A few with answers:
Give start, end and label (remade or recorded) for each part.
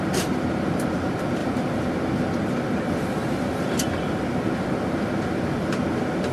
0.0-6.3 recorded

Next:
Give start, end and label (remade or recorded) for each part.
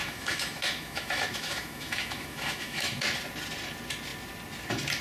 0.0-3.0 remade; 3.0-5.0 recorded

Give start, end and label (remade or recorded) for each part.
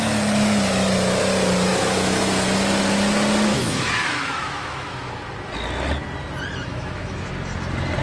0.0-1.7 recorded; 1.7-2.2 remade; 2.2-3.5 recorded; 3.5-5.1 remade; 5.1-6.7 recorded; 6.7-7.3 remade; 7.3-8.0 recorded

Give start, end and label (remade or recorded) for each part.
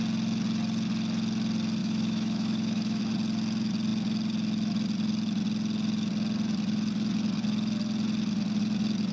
0.0-1.8 recorded; 1.8-3.0 remade; 3.0-9.1 recorded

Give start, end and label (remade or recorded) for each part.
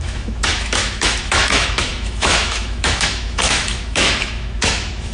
0.0-5.1 remade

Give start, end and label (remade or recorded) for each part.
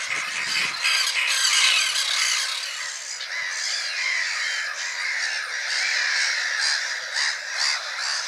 0.0-8.3 recorded